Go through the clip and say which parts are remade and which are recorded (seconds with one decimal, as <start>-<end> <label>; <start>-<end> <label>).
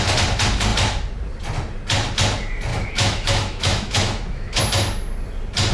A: 0.0-2.7 recorded; 2.7-4.6 remade; 4.6-5.7 recorded